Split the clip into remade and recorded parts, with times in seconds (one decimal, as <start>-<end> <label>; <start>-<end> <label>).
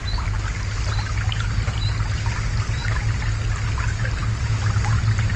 0.0-5.4 recorded